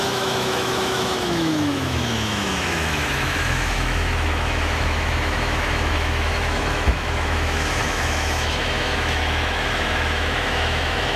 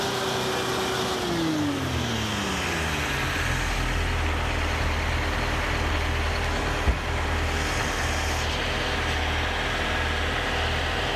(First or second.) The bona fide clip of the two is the second